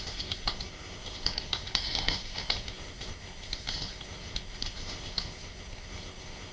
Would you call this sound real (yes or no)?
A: no